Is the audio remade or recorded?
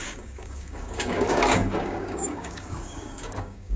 remade